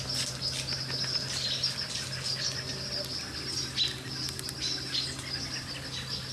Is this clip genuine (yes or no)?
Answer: yes